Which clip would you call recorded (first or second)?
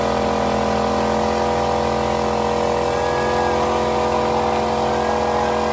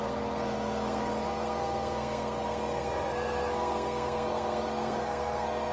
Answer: first